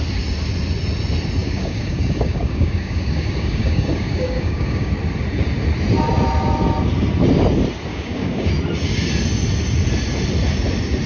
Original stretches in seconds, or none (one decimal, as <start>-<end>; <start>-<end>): 0.0-1.4; 4.9-7.9; 8.5-11.1